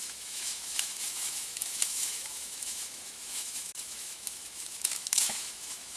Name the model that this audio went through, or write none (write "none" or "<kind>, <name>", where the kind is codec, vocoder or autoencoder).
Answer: autoencoder, DAC-VAE